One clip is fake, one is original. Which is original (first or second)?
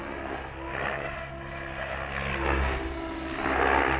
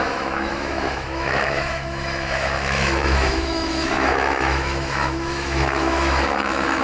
first